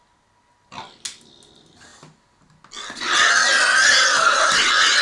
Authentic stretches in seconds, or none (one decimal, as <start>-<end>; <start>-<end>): 0.0-5.0